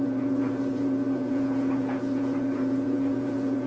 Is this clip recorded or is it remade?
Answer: remade